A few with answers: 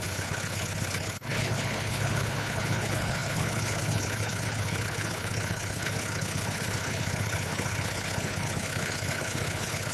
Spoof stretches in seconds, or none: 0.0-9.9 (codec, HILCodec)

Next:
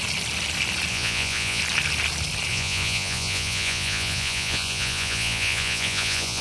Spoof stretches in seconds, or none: 0.9-1.6 (vocoder, Vocos); 2.5-6.4